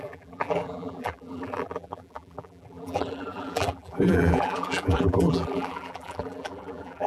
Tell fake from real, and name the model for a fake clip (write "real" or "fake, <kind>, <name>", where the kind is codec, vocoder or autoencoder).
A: fake, vocoder, BigVGAN v2